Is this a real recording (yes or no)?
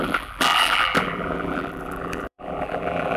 no